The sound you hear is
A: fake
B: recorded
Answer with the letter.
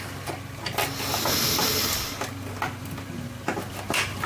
B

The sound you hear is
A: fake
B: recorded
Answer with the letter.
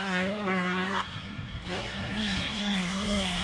A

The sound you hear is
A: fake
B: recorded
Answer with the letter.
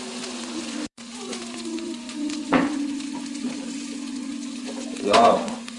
A